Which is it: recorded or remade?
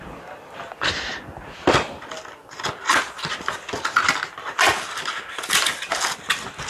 recorded